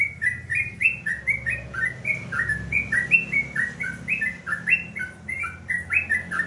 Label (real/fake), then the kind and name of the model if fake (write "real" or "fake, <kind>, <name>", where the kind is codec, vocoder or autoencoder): real